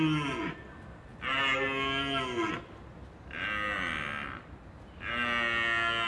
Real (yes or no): yes